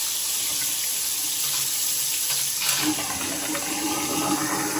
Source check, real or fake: real